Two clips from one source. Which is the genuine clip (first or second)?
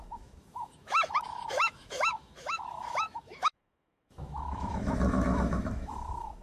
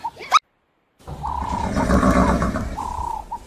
second